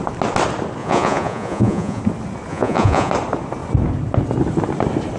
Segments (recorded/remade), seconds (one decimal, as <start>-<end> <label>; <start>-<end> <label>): 0.0-0.8 recorded; 0.8-2.0 remade; 2.0-2.5 recorded; 2.5-3.1 remade; 3.1-5.2 recorded